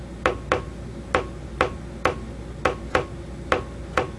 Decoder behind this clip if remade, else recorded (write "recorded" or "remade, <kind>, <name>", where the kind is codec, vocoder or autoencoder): recorded